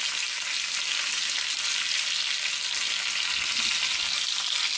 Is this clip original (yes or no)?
yes